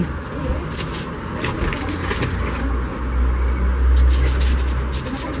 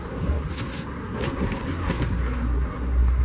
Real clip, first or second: first